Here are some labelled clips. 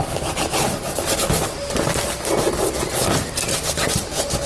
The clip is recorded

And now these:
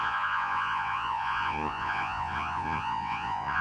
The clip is remade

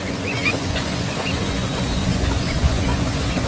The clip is remade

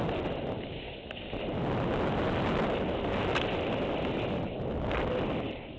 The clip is recorded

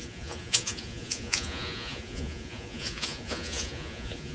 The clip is remade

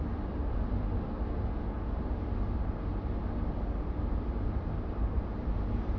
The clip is recorded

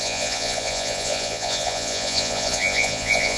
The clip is remade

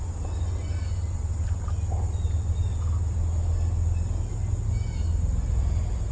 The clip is recorded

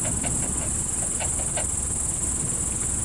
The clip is recorded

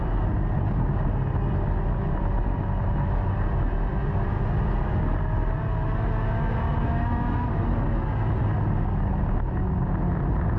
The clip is recorded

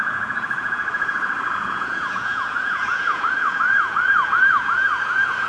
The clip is remade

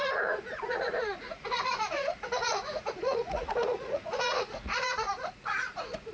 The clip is remade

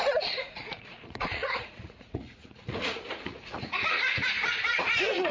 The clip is remade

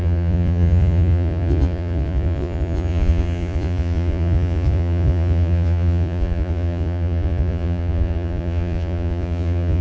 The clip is remade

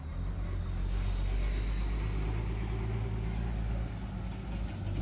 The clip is recorded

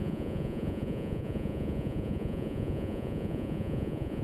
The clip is remade